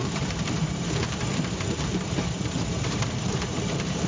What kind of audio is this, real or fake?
fake